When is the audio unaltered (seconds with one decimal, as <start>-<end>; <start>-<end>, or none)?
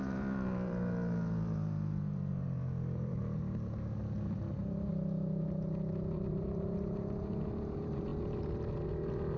3.2-6.3; 8.1-9.4